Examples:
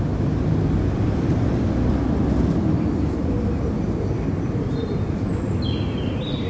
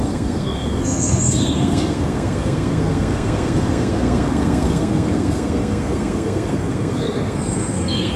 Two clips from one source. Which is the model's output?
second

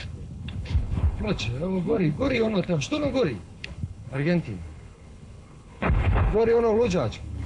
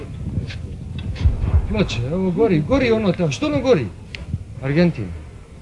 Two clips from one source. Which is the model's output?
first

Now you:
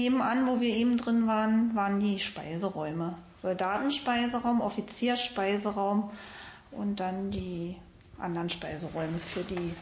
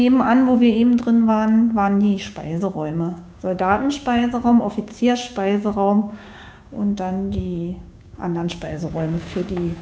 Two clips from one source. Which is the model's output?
second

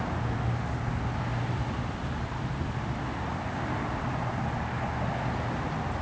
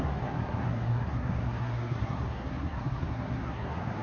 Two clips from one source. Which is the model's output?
second